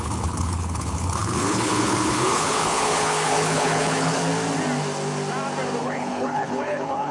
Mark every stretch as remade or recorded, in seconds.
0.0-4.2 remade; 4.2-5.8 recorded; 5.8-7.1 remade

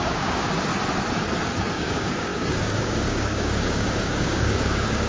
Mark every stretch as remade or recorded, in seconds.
0.0-0.7 remade; 0.7-1.7 recorded; 1.7-5.1 remade

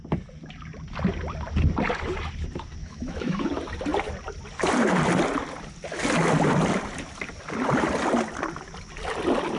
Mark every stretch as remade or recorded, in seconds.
0.0-2.8 recorded; 2.8-3.5 remade; 3.5-9.6 recorded